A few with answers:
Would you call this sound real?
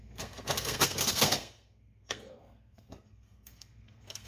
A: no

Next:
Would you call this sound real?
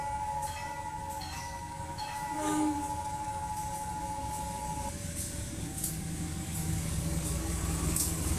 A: no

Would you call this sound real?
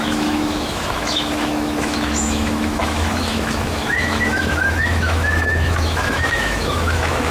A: no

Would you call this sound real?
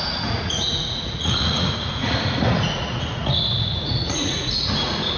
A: no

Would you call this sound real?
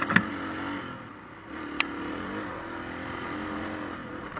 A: yes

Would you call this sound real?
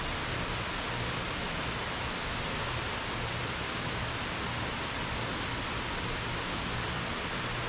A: yes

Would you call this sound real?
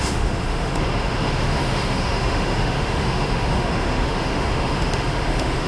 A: no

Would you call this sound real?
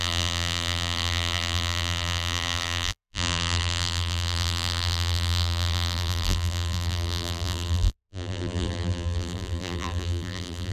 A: no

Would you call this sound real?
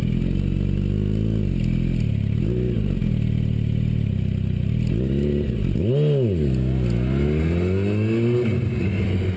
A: yes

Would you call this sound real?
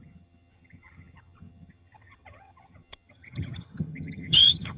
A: no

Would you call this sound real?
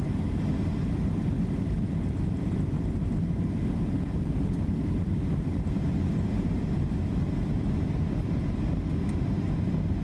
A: yes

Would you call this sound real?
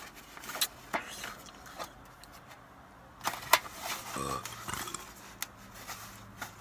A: yes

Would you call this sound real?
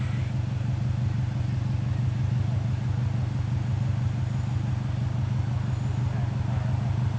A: yes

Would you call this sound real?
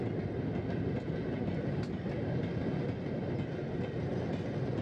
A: yes